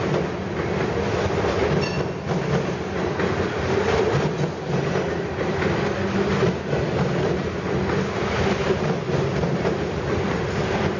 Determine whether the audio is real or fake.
real